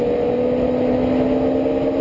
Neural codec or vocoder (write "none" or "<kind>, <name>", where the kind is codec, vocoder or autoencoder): none